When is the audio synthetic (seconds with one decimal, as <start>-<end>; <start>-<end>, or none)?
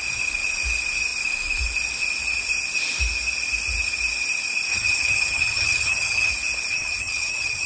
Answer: 4.7-6.3; 6.7-7.7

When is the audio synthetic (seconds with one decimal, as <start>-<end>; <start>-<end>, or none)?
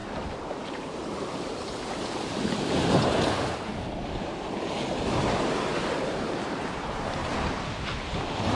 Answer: 0.0-3.7; 5.9-7.2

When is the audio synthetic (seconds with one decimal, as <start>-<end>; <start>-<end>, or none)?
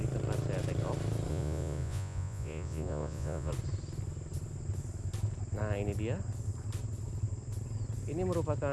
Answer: 1.3-3.5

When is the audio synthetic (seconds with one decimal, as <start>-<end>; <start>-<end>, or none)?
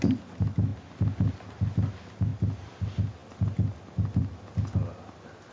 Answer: none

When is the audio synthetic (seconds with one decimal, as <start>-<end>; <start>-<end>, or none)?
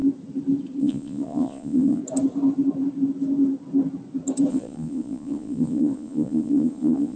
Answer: 0.8-2.0; 4.5-7.2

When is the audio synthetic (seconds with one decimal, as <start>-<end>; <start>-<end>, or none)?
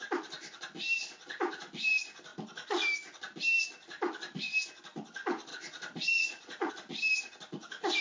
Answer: 5.5-6.7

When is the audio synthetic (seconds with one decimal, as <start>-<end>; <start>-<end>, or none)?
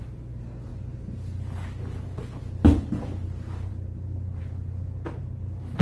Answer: none